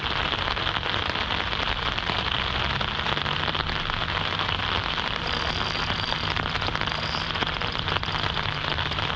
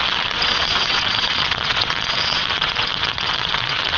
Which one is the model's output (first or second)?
second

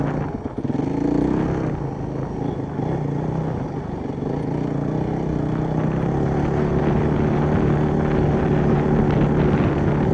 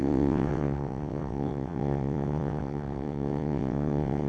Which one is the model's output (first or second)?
second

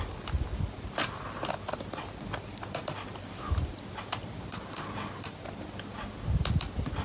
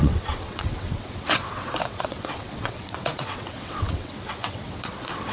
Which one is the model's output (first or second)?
second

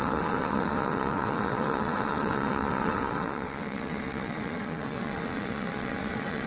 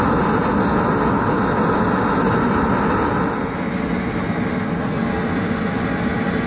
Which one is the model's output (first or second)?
first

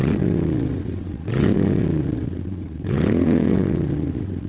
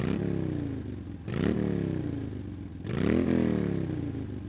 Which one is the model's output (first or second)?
first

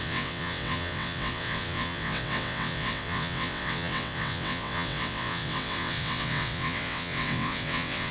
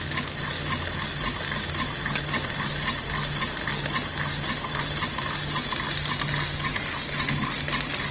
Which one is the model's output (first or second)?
first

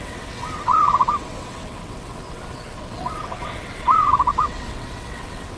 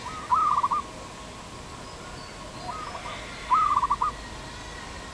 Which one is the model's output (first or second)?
first